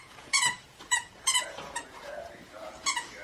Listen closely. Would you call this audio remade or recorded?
remade